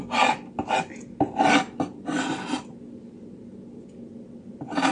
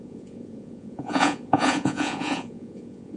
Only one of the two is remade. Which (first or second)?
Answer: second